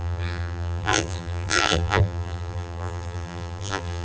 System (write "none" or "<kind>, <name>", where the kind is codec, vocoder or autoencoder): vocoder, BigVGAN v2